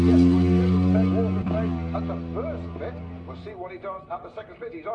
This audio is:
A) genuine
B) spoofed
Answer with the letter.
A